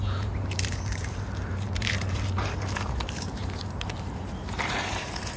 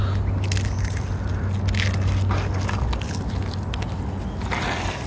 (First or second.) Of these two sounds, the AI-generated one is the first